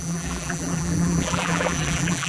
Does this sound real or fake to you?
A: fake